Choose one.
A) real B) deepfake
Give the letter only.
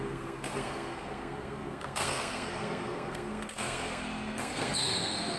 B